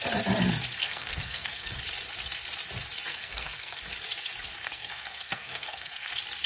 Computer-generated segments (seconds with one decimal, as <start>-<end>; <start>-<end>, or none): 0.8-1.8; 3.1-3.8; 4.6-6.1